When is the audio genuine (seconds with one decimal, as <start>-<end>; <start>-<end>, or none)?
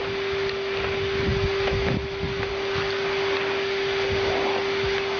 0.0-5.2